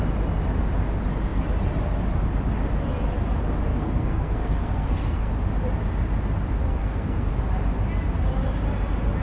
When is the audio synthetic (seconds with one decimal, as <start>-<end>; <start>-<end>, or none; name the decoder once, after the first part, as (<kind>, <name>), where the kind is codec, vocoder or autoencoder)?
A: 3.7-5.3 (codec, SNAC); 6.6-7.3